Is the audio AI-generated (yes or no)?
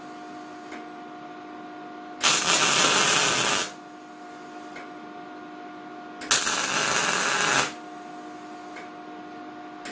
no